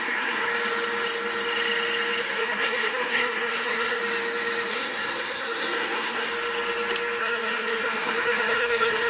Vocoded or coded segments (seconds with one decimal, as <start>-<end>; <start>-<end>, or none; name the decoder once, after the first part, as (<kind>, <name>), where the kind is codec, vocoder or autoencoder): 0.0-0.5 (codec, SNAC); 2.2-4.0; 4.7-6.3; 7.2-9.1